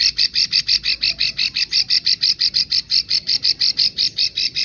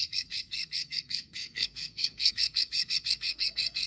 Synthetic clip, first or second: second